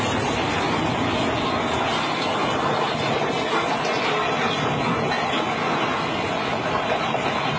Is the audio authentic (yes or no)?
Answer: yes